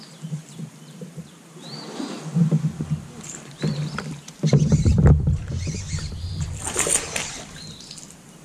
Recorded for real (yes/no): no